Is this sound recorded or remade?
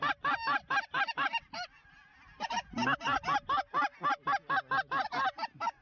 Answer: recorded